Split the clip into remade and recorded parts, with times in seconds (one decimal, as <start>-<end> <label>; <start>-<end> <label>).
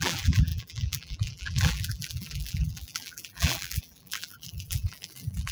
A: 0.0-5.5 remade